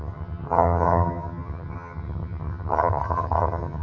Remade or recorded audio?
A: remade